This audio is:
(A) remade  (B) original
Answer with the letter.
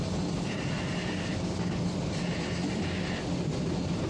B